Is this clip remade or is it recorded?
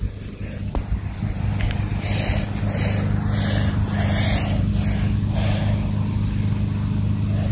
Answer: recorded